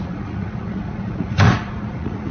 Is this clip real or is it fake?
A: fake